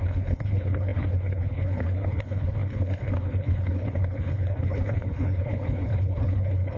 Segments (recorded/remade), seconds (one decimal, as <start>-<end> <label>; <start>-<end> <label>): 0.0-6.8 remade